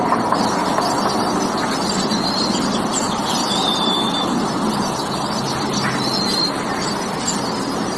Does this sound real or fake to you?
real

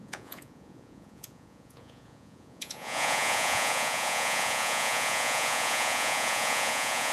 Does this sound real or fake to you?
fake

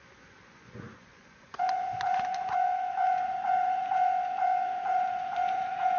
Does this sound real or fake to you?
fake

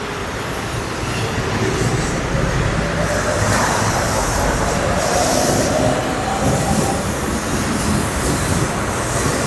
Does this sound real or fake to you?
real